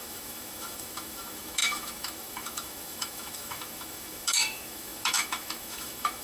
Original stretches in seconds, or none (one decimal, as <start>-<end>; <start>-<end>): none

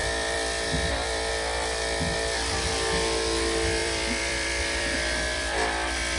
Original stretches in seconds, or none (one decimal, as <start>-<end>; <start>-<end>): 1.3-3.8; 5.4-6.2

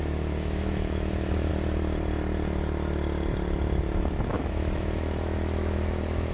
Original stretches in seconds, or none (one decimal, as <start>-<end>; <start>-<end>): 1.5-4.3

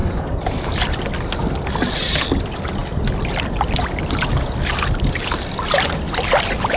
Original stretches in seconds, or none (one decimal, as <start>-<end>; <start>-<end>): 0.0-6.8

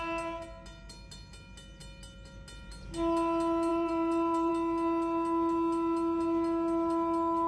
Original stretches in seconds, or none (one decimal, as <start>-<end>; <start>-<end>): 0.0-3.7; 4.5-7.5

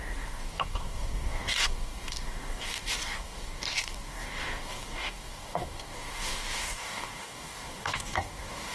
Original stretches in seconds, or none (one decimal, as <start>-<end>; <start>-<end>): none

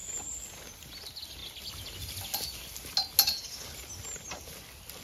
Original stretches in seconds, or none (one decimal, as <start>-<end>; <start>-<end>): 0.0-5.0